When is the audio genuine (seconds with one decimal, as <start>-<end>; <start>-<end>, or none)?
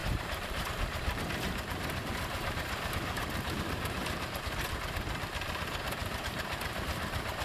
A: 4.4-6.0; 6.9-7.4